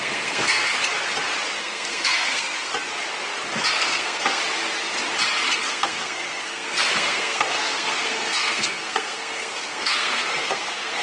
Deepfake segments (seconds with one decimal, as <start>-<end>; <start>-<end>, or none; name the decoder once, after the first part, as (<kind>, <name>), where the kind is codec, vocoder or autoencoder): 0.0-0.7 (codec, SNAC); 1.6-2.7; 3.7-4.4; 5.7-11.0